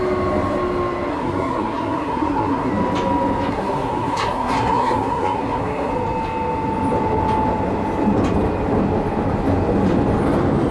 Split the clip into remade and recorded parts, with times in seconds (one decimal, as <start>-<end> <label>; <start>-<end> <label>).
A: 0.0-1.1 recorded; 1.1-2.7 remade; 2.7-3.5 recorded; 3.5-5.9 remade; 5.9-10.7 recorded